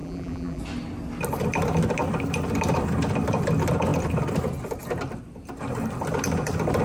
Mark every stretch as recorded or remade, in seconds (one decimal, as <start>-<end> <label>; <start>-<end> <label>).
0.0-0.6 remade; 0.6-6.8 recorded